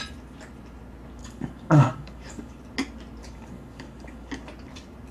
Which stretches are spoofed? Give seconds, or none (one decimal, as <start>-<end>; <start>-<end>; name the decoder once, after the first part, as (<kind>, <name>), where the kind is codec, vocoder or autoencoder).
1.2-2.6 (codec, DAC); 3.2-4.3